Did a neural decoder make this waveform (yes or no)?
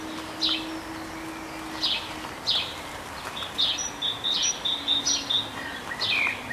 no